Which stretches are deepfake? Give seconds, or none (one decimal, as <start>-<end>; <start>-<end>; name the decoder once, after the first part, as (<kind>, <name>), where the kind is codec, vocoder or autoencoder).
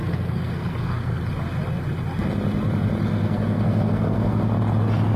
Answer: 0.0-1.2 (codec, SNAC); 3.1-4.5